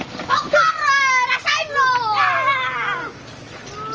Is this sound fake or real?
real